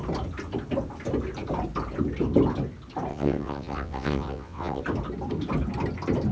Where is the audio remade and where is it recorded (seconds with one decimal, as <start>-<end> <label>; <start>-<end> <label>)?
0.0-3.1 recorded; 3.1-4.8 remade; 4.8-6.3 recorded